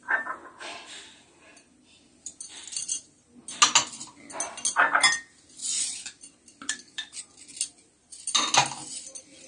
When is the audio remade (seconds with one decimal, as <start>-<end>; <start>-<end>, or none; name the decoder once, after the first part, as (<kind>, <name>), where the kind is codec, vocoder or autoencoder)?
1.5-2.5 (vocoder, BigVGAN v2); 5.6-7.2